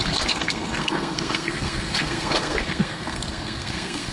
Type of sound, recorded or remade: remade